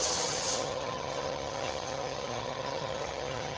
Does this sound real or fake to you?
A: fake